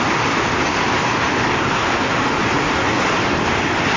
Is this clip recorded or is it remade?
recorded